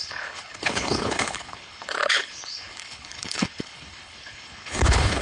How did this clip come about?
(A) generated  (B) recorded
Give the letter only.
A